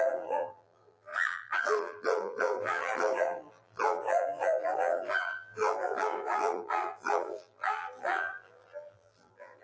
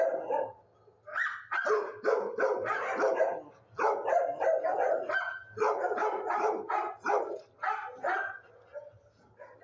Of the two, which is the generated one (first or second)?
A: first